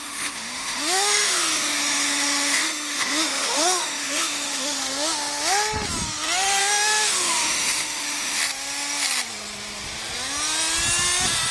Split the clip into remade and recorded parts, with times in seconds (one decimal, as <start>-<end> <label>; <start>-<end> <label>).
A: 0.0-4.8 remade; 4.8-6.6 recorded; 6.6-8.4 remade; 8.4-11.5 recorded